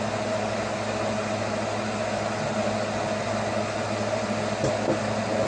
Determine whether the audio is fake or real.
real